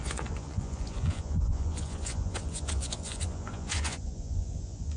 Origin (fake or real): fake